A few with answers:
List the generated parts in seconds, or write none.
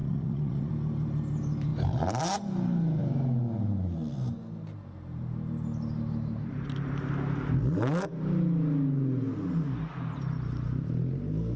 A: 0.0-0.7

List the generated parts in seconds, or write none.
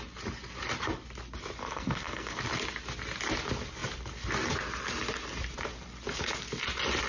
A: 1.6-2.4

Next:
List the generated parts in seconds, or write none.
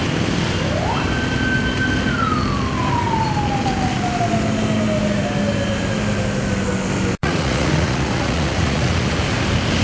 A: 7.2-9.2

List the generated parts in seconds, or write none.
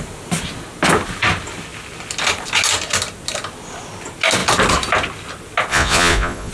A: 5.7-6.5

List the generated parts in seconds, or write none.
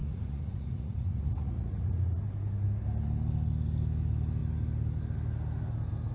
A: 0.0-2.2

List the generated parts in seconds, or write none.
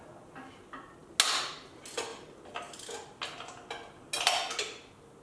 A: none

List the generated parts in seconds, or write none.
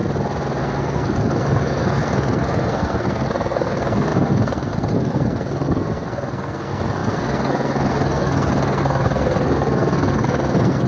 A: 0.6-10.9